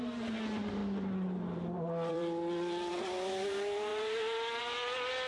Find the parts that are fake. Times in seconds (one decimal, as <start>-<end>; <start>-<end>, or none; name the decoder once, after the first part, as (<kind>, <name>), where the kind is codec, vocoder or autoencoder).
0.0-0.8 (vocoder, BigVGAN v2); 2.1-5.3